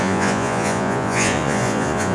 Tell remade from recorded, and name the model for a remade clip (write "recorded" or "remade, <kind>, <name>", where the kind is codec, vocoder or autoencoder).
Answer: remade, vocoder, Vocos